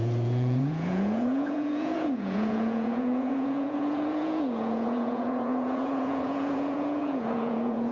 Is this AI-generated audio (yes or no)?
yes